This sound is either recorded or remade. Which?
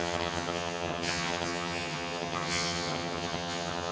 remade